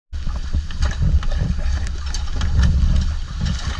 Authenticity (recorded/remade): recorded